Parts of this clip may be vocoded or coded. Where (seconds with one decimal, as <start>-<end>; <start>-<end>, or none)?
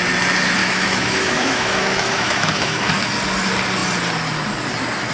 0.6-2.9